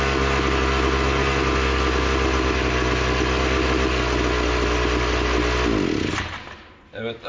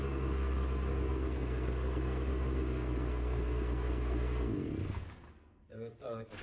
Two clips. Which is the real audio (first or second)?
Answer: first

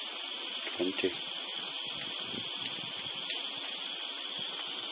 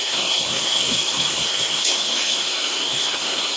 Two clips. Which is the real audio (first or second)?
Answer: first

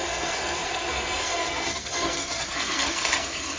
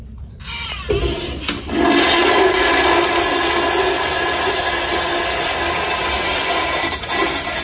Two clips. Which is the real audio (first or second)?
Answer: second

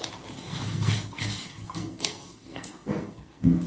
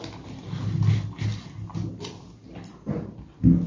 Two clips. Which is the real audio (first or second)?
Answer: second